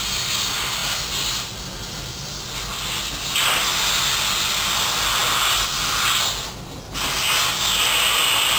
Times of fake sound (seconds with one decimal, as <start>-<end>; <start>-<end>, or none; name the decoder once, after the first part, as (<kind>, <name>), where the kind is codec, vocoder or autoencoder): none

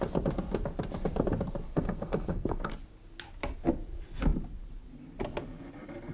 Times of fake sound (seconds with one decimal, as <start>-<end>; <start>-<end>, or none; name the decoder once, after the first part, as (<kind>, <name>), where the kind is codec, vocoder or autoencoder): 1.7-2.7 (codec, SNAC)

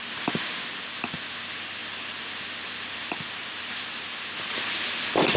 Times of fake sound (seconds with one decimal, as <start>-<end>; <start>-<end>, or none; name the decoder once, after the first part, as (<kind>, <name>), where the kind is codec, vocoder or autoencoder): none

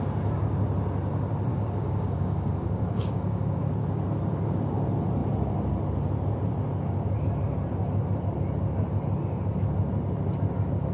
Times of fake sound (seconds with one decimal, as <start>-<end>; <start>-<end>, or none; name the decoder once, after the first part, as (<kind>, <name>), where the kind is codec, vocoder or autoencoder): 1.5-3.6 (codec, DAC)

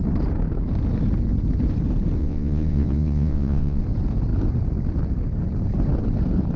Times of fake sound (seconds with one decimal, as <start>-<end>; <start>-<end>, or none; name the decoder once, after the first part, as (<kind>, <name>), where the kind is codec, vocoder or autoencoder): 2.2-3.8 (vocoder, Vocos)